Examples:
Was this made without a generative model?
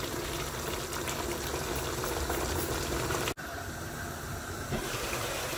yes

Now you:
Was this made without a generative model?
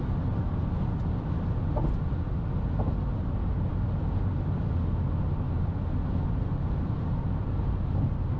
yes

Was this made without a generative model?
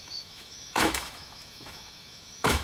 no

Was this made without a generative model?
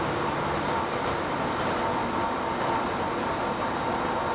yes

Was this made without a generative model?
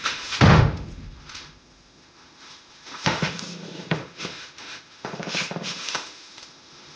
no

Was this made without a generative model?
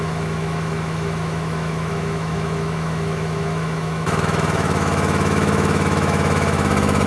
no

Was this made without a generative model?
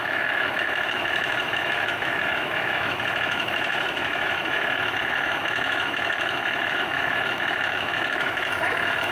no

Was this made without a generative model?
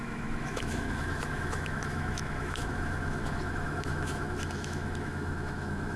no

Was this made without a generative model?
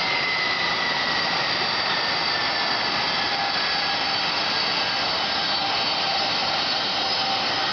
yes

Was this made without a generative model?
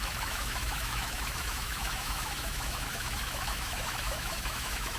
no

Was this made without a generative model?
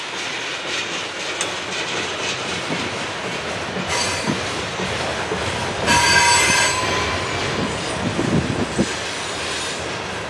yes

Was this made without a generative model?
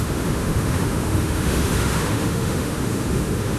no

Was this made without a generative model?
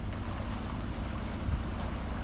yes